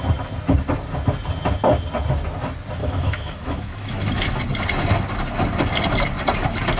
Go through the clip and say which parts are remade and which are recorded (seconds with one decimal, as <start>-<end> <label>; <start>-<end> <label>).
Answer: 0.0-2.8 recorded; 2.8-4.4 remade; 4.4-6.8 recorded